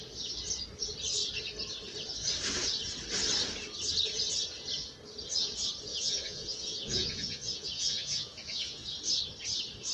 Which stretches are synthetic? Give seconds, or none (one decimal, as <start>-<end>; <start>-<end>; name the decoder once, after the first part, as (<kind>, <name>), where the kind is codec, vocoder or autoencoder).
5.9-9.0 (vocoder, Vocos)